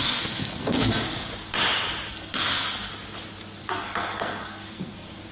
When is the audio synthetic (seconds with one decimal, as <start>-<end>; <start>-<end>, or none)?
0.0-1.3; 2.1-2.9; 3.6-5.3